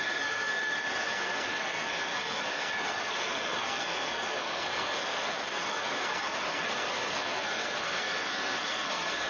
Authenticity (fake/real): fake